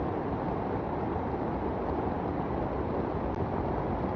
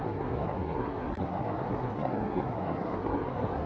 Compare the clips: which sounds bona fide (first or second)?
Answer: first